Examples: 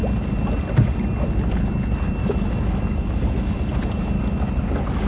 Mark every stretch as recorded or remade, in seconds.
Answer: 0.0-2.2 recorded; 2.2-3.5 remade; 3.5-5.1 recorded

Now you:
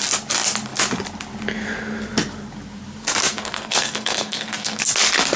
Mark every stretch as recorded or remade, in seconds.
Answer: 0.0-3.3 recorded; 3.3-4.8 remade; 4.8-5.4 recorded

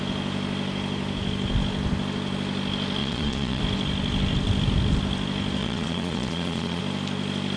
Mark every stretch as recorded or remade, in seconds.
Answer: 0.0-3.0 recorded; 3.0-3.6 remade; 3.6-5.6 recorded; 5.6-6.8 remade; 6.8-7.6 recorded

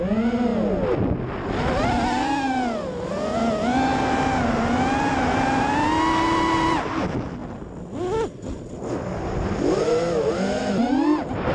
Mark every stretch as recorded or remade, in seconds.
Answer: 0.0-11.5 recorded

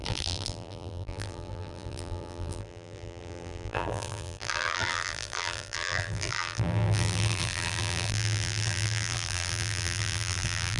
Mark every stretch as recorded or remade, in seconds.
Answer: 0.0-10.8 remade